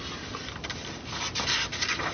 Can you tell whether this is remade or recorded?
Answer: recorded